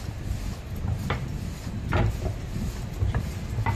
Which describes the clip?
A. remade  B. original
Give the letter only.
B